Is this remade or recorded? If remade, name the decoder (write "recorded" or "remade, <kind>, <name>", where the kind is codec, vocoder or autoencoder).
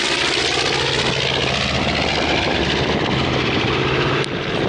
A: recorded